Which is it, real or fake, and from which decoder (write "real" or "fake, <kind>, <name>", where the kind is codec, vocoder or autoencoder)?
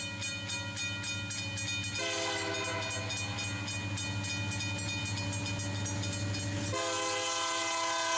real